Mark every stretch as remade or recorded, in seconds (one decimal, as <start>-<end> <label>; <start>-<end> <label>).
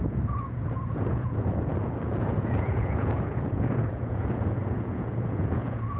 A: 0.0-6.0 remade